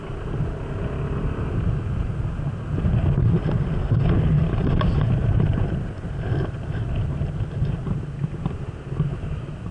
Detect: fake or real real